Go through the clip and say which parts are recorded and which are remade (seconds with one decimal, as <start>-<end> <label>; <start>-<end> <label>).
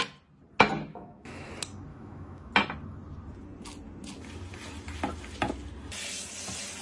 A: 0.0-0.9 recorded; 0.9-1.5 remade; 1.5-1.9 recorded; 1.9-2.5 remade; 2.5-6.8 recorded